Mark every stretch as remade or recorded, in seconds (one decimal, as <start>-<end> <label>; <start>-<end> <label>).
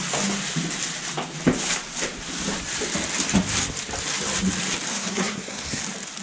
0.0-4.9 recorded; 4.9-5.8 remade; 5.8-6.2 recorded